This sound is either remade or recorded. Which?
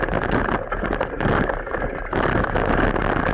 recorded